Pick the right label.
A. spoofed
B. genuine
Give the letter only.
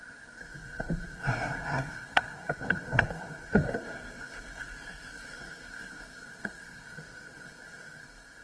A